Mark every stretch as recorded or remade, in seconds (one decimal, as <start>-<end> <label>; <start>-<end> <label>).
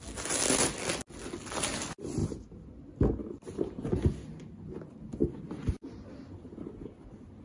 0.0-7.4 recorded